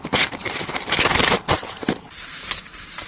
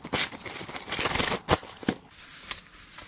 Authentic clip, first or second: second